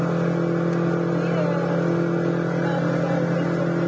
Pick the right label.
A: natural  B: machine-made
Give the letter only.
A